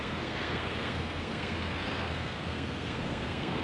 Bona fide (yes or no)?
no